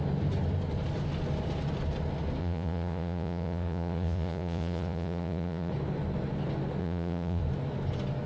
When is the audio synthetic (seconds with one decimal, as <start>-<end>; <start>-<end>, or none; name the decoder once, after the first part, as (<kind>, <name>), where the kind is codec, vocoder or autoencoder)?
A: 2.4-5.7 (vocoder, Vocos); 6.8-7.4